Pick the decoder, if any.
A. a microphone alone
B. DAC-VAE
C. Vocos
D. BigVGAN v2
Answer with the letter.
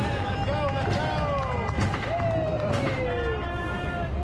A